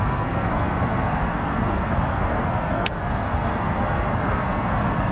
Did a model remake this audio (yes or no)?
yes